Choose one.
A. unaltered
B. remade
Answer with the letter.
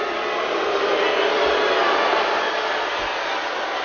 A